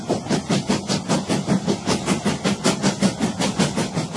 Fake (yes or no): no